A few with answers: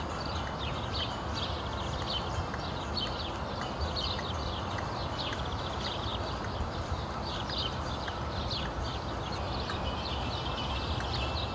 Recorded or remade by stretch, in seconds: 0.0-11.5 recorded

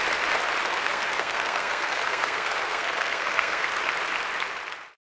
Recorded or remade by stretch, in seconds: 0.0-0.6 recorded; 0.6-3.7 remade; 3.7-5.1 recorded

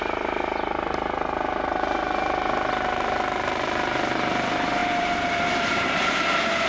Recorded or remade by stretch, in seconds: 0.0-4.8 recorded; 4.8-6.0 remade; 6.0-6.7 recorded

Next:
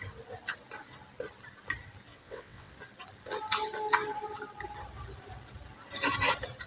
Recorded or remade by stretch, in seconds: 0.0-2.1 recorded; 2.1-2.7 remade; 2.7-6.7 recorded

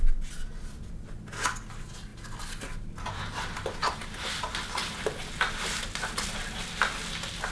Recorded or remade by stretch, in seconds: 0.0-7.5 recorded

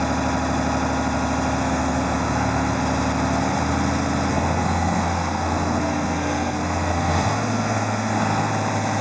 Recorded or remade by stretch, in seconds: 0.0-1.6 recorded; 1.6-2.8 remade; 2.8-4.3 recorded; 4.3-8.5 remade; 8.5-9.0 recorded

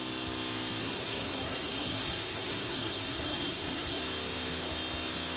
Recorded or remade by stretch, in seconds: 0.0-0.8 recorded; 0.8-4.0 remade; 4.0-5.4 recorded